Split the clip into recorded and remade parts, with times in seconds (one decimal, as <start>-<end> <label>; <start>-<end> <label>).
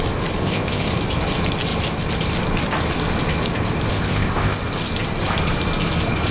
0.0-0.4 recorded; 0.4-0.9 remade; 0.9-3.9 recorded; 3.9-4.6 remade; 4.6-6.3 recorded